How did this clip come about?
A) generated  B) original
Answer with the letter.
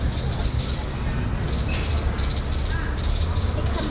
B